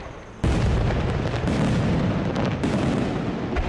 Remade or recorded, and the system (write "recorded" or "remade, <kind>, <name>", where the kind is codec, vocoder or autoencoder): recorded